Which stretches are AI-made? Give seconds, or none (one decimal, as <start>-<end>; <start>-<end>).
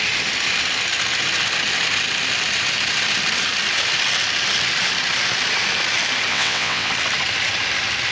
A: 6.3-6.9